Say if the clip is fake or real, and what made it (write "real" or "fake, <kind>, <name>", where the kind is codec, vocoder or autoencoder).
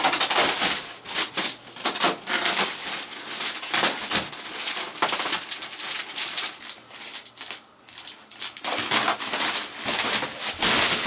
real